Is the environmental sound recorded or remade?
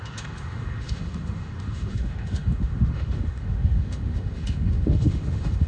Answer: remade